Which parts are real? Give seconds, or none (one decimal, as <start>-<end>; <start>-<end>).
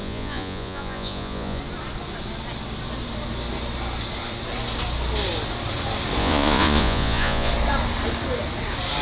1.6-6.2; 7.5-9.0